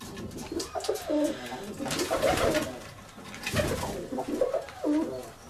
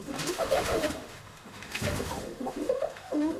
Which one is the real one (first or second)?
first